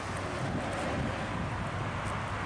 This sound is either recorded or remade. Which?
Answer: recorded